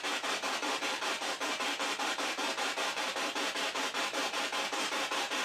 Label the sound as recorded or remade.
remade